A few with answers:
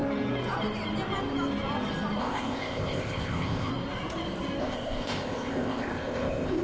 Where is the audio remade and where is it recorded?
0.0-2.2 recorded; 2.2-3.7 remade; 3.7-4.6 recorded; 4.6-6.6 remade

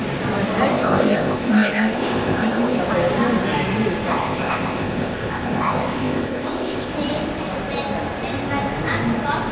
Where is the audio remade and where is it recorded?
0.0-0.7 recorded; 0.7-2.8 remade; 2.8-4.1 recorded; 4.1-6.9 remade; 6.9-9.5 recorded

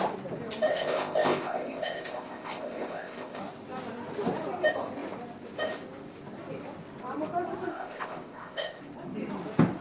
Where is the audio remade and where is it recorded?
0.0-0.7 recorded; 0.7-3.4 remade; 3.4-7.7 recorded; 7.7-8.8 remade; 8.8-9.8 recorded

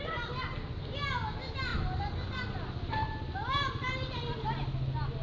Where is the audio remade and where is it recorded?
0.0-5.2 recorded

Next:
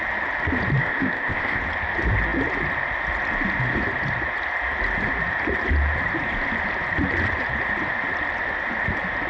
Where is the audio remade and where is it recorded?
0.0-0.8 recorded; 0.8-1.6 remade; 1.6-9.3 recorded

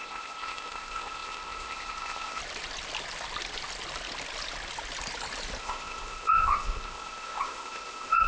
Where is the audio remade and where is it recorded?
0.0-2.4 remade; 2.4-5.6 recorded; 5.6-8.3 remade

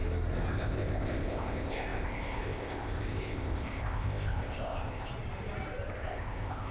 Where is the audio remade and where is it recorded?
0.0-0.5 recorded; 0.5-5.1 remade; 5.1-5.9 recorded; 5.9-6.7 remade

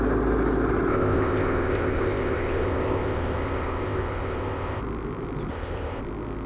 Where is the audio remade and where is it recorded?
0.0-0.9 recorded; 0.9-4.8 remade; 4.8-5.5 recorded; 5.5-6.0 remade; 6.0-6.5 recorded